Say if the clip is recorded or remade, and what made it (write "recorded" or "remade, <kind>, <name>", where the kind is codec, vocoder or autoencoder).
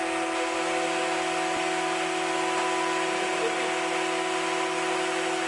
recorded